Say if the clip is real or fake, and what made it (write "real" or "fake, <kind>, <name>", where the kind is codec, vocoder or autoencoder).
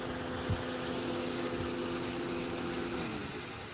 real